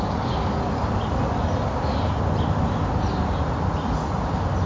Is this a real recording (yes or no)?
yes